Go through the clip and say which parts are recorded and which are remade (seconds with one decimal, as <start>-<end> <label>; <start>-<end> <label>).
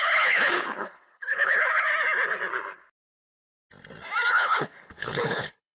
0.0-1.9 remade; 1.9-4.3 recorded; 4.3-5.7 remade